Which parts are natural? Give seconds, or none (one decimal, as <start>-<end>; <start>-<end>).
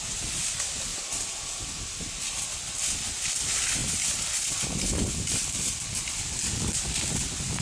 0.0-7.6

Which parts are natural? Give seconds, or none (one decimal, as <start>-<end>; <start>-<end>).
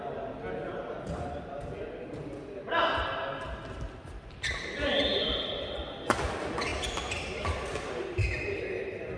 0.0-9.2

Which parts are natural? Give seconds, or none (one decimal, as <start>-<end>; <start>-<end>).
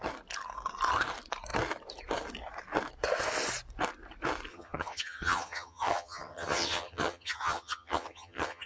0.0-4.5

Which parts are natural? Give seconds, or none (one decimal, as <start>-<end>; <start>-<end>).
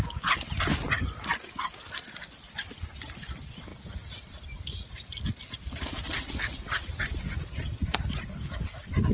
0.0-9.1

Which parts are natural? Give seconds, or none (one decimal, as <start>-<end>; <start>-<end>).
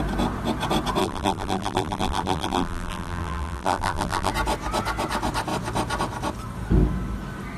0.0-1.0; 4.3-7.6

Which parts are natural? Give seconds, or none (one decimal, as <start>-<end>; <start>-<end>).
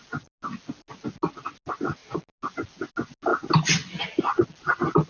0.0-5.1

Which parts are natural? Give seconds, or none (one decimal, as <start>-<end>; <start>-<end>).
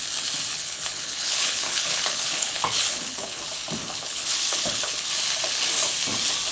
0.0-0.5; 3.4-3.8; 5.1-6.5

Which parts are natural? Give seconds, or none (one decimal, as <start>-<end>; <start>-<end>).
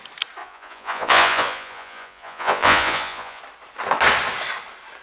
0.0-0.4; 3.4-5.0